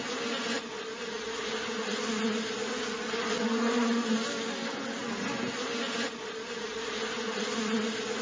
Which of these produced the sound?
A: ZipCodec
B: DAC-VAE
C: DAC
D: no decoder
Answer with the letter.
D